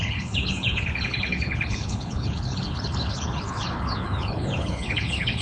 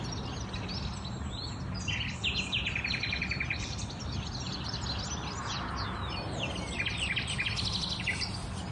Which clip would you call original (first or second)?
second